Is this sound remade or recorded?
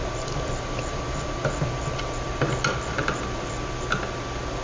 recorded